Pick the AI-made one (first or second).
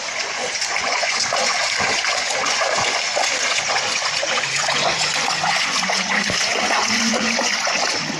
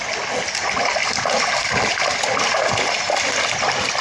first